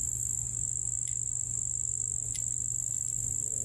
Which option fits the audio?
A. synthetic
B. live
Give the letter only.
B